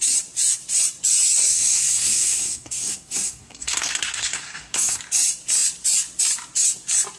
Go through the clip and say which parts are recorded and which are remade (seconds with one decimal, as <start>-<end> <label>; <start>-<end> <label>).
0.0-1.5 recorded; 1.5-5.0 remade; 5.0-7.2 recorded